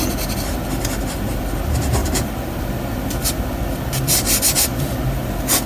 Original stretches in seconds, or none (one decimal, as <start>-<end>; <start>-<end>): 0.0-5.7